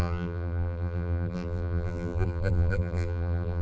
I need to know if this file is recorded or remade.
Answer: remade